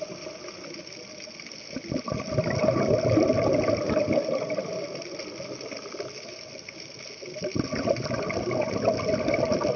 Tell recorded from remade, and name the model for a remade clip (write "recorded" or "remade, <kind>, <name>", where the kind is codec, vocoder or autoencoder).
recorded